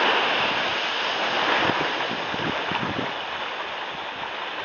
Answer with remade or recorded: recorded